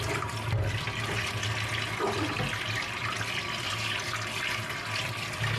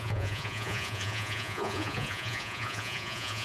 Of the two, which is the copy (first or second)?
second